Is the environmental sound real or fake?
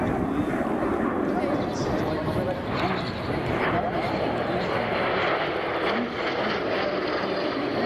real